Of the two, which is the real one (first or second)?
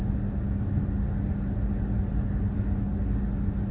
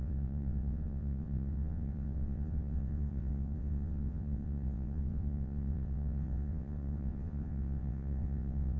first